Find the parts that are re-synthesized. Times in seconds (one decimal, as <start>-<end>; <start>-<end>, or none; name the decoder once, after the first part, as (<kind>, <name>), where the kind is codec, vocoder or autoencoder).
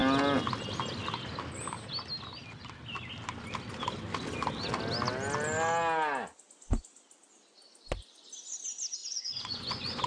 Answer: 9.0-10.1 (vocoder, Vocos)